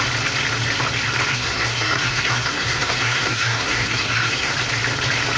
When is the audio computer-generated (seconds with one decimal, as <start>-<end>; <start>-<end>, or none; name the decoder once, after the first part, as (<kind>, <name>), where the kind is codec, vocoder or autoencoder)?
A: 1.3-4.5 (codec, SNAC)